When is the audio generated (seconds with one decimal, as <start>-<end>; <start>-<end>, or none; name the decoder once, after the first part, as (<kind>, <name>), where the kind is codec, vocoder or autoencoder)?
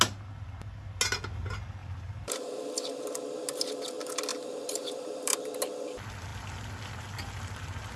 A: 1.8-2.6 (vocoder, BigVGAN v2); 4.3-5.5